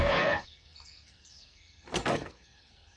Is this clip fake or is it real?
fake